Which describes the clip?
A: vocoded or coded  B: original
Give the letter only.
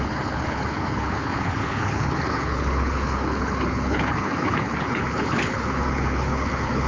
A